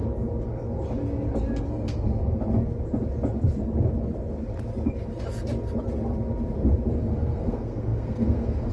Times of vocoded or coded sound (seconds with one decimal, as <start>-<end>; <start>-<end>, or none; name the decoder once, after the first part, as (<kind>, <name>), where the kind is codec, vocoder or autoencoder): 1.6-2.1 (codec, SNAC); 7.0-8.7